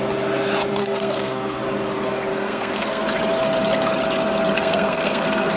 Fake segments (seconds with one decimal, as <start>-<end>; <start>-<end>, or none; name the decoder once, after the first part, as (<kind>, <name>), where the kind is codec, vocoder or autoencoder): 0.8-1.6 (codec, SNAC); 2.3-3.0; 4.6-5.6